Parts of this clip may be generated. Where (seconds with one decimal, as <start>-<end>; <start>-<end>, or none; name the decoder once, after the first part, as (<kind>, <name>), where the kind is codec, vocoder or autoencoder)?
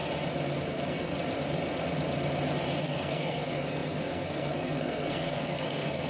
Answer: 0.7-1.1 (codec, SNAC); 2.8-6.1